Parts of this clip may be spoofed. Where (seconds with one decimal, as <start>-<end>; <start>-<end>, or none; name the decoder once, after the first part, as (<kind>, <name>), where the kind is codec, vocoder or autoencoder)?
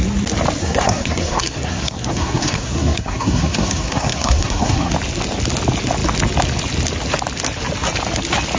0.6-4.9 (codec, SNAC)